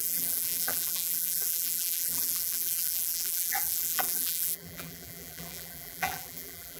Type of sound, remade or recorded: remade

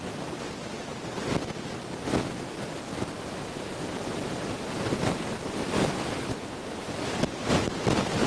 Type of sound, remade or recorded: recorded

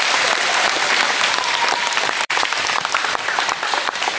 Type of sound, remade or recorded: remade